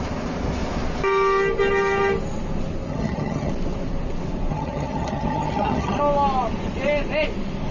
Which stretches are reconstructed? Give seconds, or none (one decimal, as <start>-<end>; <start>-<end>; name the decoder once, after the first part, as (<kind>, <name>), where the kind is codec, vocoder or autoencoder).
2.9-3.5 (vocoder, HiFi-GAN); 4.5-6.0